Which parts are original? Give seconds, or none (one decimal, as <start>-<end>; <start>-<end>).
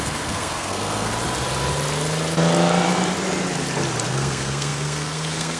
1.1-4.1